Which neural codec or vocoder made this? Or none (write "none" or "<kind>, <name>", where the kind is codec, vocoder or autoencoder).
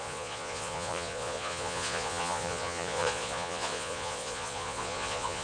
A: vocoder, Vocos